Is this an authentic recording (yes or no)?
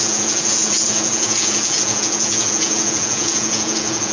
no